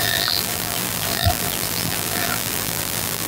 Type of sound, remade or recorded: remade